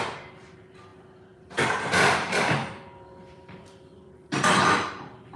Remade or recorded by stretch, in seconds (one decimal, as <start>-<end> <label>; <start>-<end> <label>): 0.0-4.6 remade; 4.6-5.4 recorded